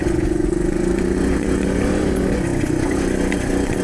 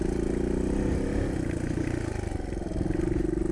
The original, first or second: second